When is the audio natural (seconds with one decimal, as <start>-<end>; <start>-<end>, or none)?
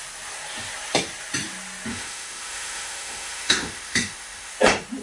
0.0-1.9; 4.5-5.0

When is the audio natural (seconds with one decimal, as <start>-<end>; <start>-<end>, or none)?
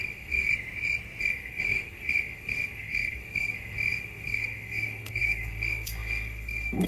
0.5-1.2